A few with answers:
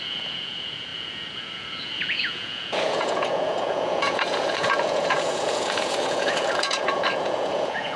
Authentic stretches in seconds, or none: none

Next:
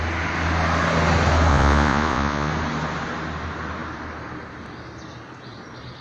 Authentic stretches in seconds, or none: 0.0-1.5; 2.5-6.0